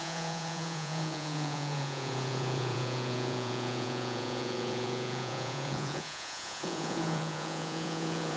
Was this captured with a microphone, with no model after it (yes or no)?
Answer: no